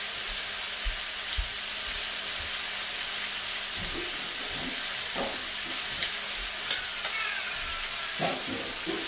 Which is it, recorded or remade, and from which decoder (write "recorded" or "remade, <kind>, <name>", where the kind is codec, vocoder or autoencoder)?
recorded